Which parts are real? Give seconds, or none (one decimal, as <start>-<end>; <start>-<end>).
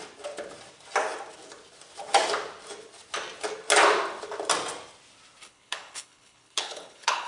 0.0-5.4